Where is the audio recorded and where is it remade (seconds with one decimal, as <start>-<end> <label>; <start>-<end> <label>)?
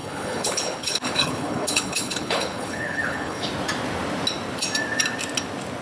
0.0-3.5 remade; 3.5-5.8 recorded